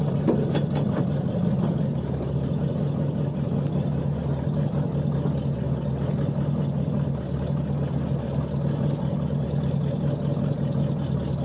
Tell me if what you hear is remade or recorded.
recorded